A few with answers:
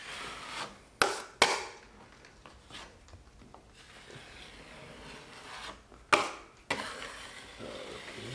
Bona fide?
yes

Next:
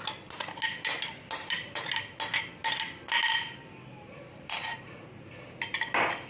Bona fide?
yes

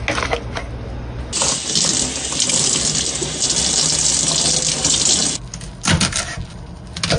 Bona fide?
yes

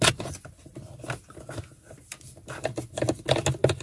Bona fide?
yes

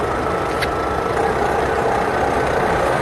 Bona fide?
yes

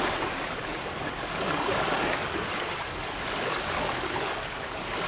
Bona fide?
no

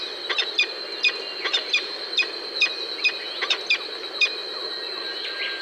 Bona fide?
yes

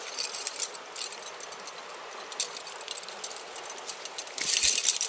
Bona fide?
yes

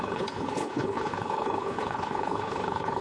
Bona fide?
no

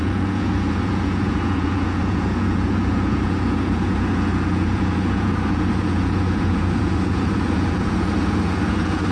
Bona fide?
no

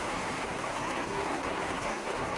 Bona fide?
no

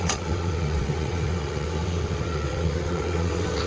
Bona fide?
no